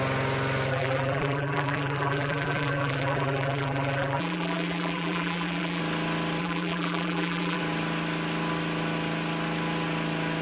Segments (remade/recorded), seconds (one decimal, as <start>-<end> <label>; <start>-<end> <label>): 0.0-0.7 recorded; 0.7-5.8 remade; 5.8-6.4 recorded; 6.4-7.6 remade; 7.6-10.4 recorded